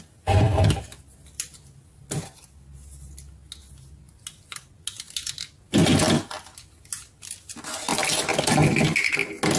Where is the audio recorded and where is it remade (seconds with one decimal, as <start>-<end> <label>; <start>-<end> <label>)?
0.0-9.6 recorded